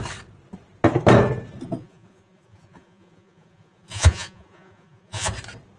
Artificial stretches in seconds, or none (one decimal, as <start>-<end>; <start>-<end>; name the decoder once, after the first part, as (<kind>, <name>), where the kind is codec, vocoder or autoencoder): 1.8-5.3 (vocoder, Vocos)